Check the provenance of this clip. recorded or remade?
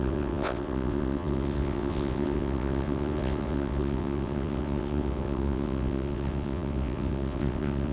remade